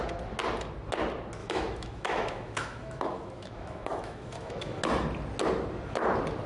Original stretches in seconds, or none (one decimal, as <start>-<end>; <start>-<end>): 0.0-1.4; 4.8-6.5

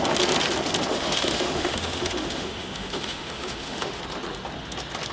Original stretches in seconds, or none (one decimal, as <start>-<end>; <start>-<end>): 0.0-0.9; 4.0-5.1

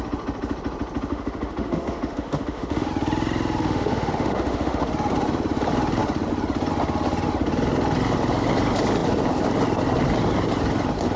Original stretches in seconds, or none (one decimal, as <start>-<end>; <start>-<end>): 0.0-1.1; 2.9-3.6; 4.9-11.2

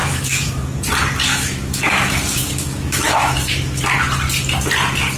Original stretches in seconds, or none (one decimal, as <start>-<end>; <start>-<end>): 0.5-1.3; 3.8-5.2

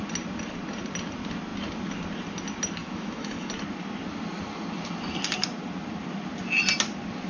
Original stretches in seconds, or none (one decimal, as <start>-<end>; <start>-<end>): 0.0-2.8; 3.5-7.3